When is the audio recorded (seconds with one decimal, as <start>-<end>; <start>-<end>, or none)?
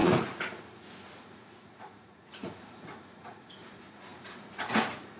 none